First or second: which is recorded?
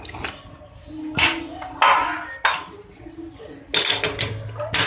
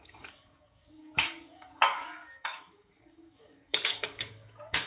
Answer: first